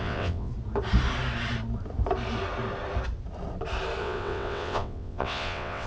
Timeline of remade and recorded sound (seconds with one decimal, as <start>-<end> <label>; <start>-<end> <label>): 0.0-0.5 remade; 0.5-4.0 recorded; 4.0-5.9 remade